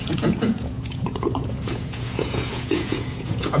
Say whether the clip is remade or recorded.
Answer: remade